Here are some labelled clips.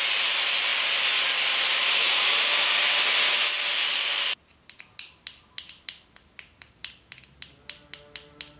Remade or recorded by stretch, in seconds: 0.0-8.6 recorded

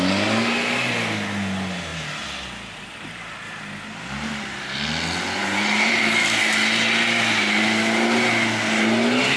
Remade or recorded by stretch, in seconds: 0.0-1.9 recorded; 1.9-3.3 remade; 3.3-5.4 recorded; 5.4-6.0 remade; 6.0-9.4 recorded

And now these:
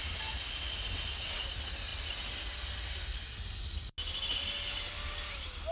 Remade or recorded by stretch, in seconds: 0.0-5.7 recorded

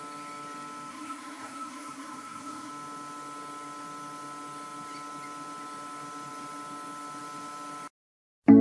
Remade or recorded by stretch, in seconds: 0.0-0.9 recorded; 0.9-2.7 remade; 2.7-8.6 recorded

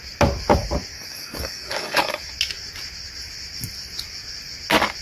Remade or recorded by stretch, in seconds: 0.0-0.9 recorded; 0.9-2.3 remade; 2.3-5.0 recorded